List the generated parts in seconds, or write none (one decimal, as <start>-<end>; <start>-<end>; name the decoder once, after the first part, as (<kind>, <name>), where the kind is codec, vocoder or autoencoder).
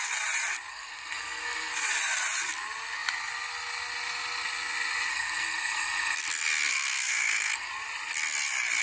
0.7-1.7 (codec, SNAC); 5.1-6.2; 6.7-7.7